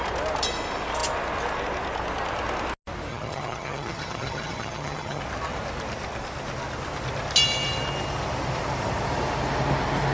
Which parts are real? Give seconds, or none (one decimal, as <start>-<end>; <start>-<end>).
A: 0.0-3.1; 5.2-10.1